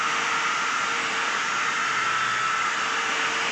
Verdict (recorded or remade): remade